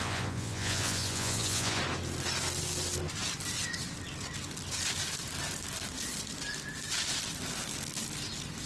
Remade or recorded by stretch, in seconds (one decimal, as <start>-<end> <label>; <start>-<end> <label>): 0.0-1.8 remade; 1.8-8.7 recorded